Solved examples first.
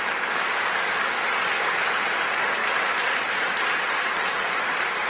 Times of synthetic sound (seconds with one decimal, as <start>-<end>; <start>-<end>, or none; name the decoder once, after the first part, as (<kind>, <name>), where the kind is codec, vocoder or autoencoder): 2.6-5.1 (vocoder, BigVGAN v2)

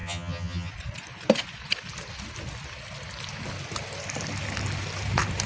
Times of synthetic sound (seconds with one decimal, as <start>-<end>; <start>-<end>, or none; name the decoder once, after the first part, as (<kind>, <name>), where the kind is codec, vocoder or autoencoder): 0.0-0.7 (vocoder, HiFi-GAN)

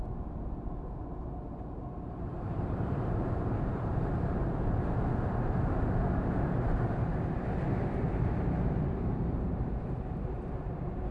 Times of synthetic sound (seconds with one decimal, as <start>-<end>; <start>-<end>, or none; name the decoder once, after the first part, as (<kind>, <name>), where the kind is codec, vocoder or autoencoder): 0.0-3.9 (vocoder, BigVGAN v2); 8.1-11.1